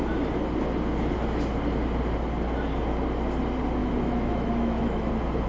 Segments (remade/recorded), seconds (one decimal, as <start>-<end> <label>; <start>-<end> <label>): 0.0-3.8 recorded; 3.8-5.1 remade; 5.1-5.5 recorded

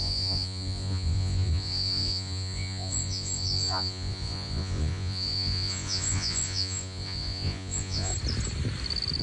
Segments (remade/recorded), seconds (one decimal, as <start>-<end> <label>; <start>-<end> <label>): 0.0-8.1 remade; 8.1-9.2 recorded

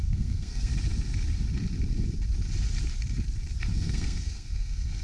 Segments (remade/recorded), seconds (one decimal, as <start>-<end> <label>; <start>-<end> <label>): 0.0-0.7 remade; 0.7-3.7 recorded; 3.7-5.0 remade

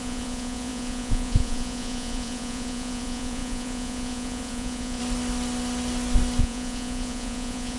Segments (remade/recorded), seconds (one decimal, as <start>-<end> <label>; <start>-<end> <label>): 0.0-5.0 remade; 5.0-6.4 recorded; 6.4-7.8 remade

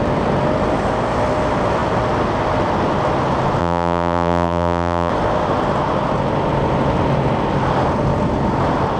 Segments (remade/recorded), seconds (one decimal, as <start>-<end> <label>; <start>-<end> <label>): 0.0-3.6 recorded; 3.6-5.1 remade; 5.1-9.0 recorded

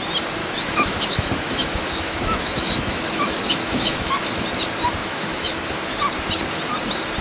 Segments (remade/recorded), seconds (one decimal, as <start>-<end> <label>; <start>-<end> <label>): 0.0-0.4 recorded; 0.4-4.3 remade; 4.3-5.0 recorded; 5.0-5.8 remade; 5.8-7.2 recorded

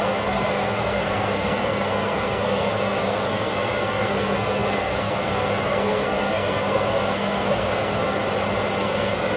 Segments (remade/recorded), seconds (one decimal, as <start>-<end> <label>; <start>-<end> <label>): 0.0-8.2 remade; 8.2-8.8 recorded; 8.8-9.4 remade